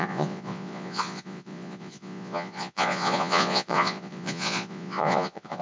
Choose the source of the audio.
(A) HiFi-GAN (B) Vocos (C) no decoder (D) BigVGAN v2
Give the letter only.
B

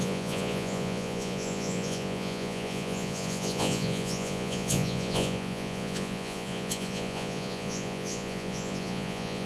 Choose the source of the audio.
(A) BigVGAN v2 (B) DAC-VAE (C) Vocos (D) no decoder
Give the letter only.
C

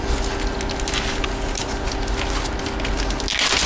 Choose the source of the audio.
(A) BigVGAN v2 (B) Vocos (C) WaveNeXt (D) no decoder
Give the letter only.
D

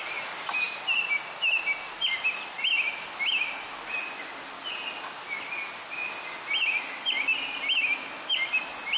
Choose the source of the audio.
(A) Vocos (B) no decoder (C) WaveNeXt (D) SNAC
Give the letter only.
B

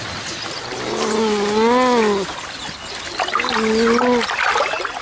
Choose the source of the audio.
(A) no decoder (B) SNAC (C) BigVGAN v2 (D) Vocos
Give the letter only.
A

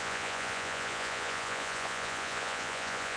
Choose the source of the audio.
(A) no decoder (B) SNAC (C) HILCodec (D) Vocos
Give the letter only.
D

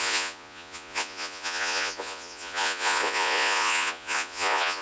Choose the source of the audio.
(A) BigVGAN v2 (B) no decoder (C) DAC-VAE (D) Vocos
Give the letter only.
D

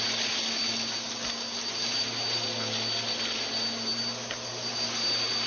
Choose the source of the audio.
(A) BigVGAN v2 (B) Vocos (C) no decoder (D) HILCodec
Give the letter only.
C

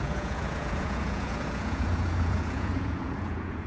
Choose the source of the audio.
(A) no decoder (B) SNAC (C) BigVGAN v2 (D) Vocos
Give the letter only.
D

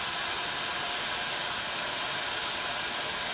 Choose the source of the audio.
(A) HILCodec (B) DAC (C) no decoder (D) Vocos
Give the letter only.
C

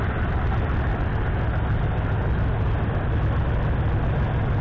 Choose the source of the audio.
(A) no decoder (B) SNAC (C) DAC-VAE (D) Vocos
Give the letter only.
A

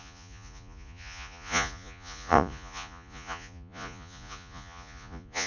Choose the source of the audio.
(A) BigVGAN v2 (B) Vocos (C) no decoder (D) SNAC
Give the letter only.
B